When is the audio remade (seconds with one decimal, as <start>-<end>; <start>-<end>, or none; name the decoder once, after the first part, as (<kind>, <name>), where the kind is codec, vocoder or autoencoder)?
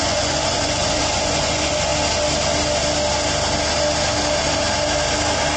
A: 0.0-1.9 (vocoder, Vocos)